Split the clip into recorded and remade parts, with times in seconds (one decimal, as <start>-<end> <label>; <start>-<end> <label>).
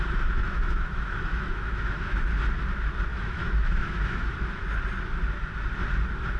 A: 0.0-0.4 recorded; 0.4-2.3 remade; 2.3-3.1 recorded; 3.1-4.6 remade; 4.6-6.4 recorded